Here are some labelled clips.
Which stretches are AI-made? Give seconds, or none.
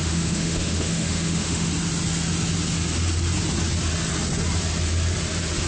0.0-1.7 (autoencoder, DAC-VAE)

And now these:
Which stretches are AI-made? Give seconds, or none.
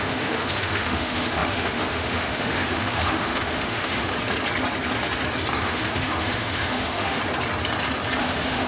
0.0-4.1 (autoencoder, DAC-VAE); 5.6-7.2; 8.2-8.7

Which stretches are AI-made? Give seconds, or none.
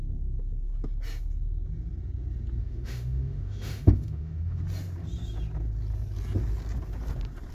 2.6-4.6 (autoencoder, DAC-VAE)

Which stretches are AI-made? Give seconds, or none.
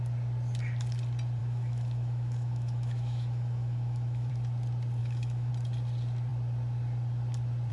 1.4-4.3 (autoencoder, DAC-VAE); 5.0-5.5